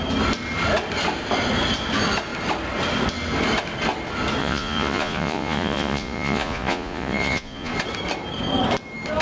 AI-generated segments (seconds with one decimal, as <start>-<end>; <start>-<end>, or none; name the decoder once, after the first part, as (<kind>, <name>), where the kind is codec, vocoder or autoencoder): 4.4-7.7 (vocoder, Vocos)